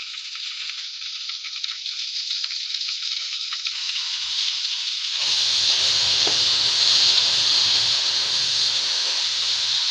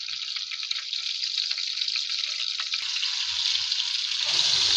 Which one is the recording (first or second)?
second